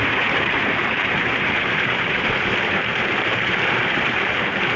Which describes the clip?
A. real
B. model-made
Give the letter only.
B